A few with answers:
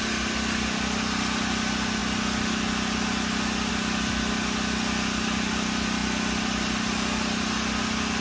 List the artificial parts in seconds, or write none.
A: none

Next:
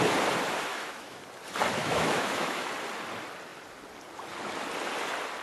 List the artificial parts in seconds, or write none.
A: 0.7-1.2 (autoencoder, DAC-VAE); 1.8-2.7

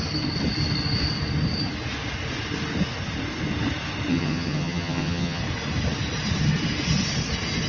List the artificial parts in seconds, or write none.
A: 4.1-5.4 (vocoder, HiFi-GAN)

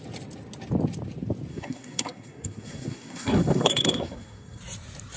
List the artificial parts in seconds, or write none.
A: 1.5-4.6 (codec, SNAC)

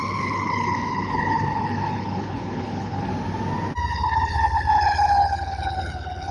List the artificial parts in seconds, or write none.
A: 0.0-3.1 (codec, HILCodec); 3.9-6.3